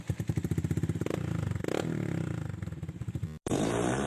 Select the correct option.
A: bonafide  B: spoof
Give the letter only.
B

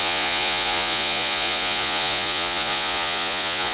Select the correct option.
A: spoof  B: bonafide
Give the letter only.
A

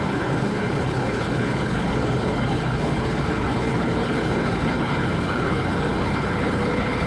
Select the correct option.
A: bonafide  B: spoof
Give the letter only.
B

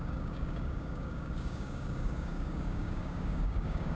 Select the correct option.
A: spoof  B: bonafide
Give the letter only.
A